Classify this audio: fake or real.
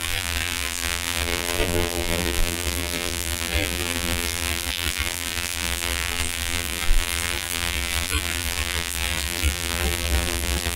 fake